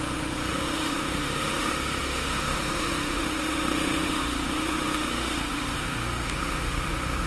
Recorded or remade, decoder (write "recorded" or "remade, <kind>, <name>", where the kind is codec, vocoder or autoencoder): remade, autoencoder, DAC-VAE